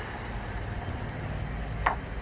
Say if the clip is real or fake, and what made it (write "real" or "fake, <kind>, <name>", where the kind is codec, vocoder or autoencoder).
real